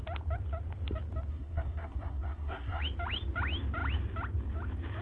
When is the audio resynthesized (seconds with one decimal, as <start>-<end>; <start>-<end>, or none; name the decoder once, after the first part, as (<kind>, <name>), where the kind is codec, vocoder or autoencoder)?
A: 1.3-2.8 (codec, SNAC)